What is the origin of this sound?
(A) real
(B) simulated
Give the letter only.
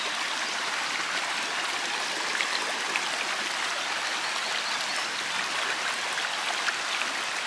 A